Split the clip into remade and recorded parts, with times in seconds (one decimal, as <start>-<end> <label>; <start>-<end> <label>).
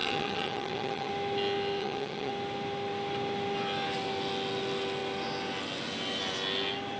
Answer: 0.0-1.1 remade; 1.1-1.8 recorded; 1.8-2.3 remade; 2.3-7.0 recorded